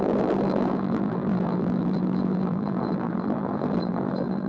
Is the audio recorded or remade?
remade